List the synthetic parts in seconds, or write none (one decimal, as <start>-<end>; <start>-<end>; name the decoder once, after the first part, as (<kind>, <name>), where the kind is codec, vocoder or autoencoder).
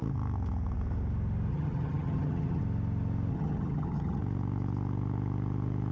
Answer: 1.5-2.6 (vocoder, HiFi-GAN); 3.3-4.2